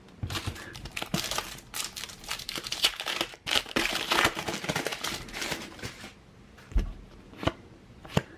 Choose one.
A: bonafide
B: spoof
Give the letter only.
B